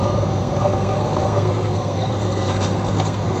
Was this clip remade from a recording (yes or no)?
yes